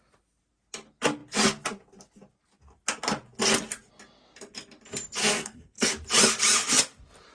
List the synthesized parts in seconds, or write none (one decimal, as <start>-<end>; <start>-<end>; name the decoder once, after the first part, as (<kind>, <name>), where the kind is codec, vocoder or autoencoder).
5.2-5.9 (codec, SNAC)